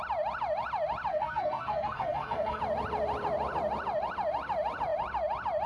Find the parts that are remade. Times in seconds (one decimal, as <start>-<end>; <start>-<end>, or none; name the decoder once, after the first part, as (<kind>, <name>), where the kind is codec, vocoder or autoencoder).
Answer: 1.1-2.6 (codec, SNAC)